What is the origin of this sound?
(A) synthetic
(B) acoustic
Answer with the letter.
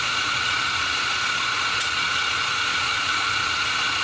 A